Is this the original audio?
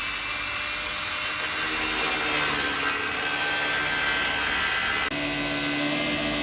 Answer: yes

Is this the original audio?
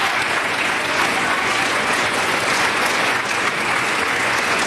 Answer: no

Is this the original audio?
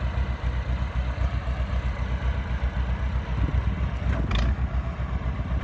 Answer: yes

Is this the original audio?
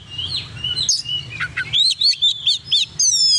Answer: yes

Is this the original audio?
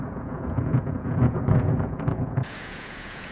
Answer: no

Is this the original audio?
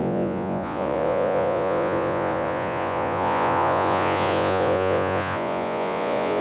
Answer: no